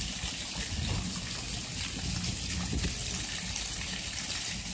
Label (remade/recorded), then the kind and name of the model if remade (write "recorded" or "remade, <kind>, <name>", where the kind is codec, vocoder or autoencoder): recorded